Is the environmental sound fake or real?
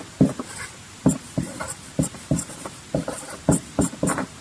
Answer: fake